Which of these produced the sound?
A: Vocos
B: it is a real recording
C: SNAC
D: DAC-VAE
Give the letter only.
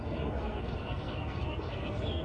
C